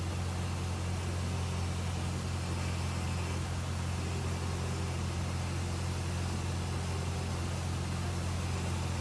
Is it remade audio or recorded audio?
recorded